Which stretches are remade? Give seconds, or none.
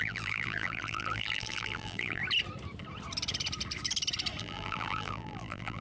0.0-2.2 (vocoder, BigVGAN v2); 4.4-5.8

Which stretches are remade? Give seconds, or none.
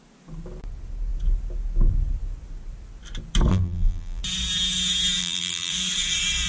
3.5-4.2 (vocoder, BigVGAN v2); 5.2-5.7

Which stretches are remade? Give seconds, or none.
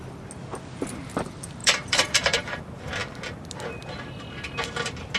1.6-2.6 (vocoder, BigVGAN v2)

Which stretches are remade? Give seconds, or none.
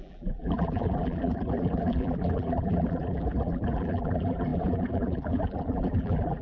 0.0-6.4 (vocoder, BigVGAN v2)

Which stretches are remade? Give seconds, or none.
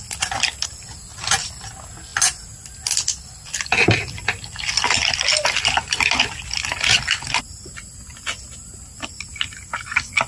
none